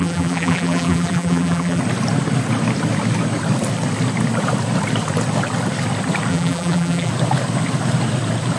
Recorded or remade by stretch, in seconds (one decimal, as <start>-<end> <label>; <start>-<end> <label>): 0.0-1.8 remade; 1.8-6.3 recorded; 6.3-7.1 remade; 7.1-8.6 recorded